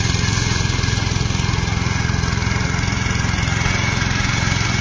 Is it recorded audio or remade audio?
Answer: remade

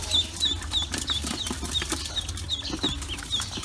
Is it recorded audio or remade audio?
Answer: recorded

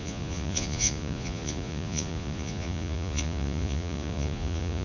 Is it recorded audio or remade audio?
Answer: remade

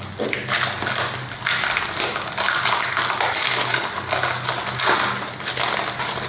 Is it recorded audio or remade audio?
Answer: recorded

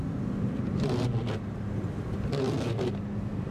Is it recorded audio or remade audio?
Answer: recorded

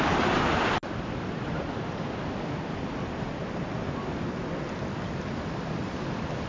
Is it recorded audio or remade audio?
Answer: recorded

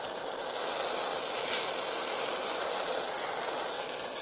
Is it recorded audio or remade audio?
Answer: recorded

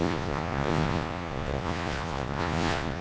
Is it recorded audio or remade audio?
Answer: remade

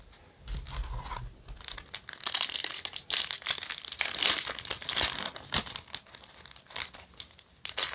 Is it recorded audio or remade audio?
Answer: recorded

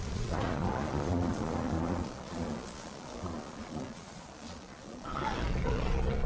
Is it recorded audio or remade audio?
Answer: remade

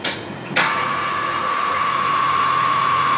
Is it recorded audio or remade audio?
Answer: remade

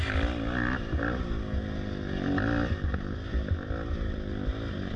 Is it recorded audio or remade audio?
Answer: recorded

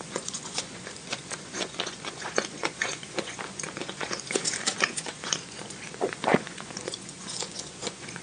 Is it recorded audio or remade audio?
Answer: remade